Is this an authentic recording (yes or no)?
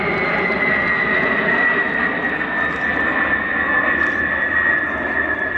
yes